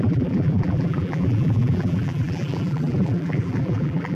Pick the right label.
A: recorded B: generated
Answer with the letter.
B